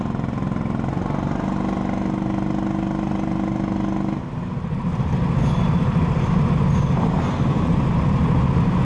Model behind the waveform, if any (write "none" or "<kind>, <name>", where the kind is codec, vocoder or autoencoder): none